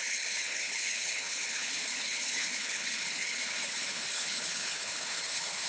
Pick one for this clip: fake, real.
fake